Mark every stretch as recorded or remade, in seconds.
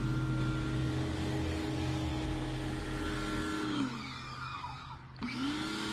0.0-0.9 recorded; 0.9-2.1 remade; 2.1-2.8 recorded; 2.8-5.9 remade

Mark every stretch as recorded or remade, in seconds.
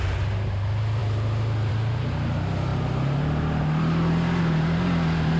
0.0-5.4 recorded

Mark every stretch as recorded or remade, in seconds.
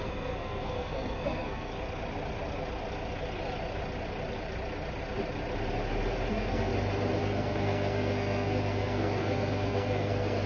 0.0-1.7 remade; 1.7-6.3 recorded; 6.3-6.7 remade; 6.7-7.2 recorded; 7.2-10.5 remade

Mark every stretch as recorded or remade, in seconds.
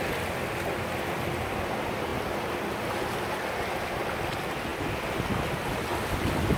0.0-6.6 recorded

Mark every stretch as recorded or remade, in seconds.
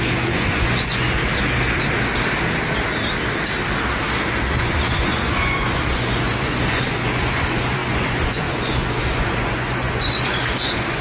0.0-1.2 remade; 1.2-4.6 recorded; 4.6-11.0 remade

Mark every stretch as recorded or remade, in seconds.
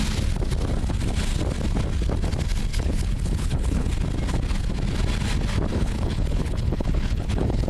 0.0-2.7 recorded; 2.7-3.9 remade; 3.9-5.7 recorded; 5.7-7.7 remade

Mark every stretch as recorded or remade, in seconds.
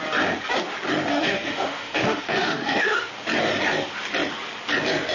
0.0-1.1 recorded; 1.1-3.1 remade; 3.1-5.1 recorded